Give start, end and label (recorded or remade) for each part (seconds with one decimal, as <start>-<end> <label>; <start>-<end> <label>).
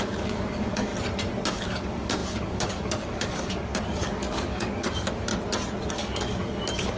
0.0-0.9 remade; 0.9-1.5 recorded; 1.5-5.3 remade; 5.3-5.9 recorded; 5.9-7.0 remade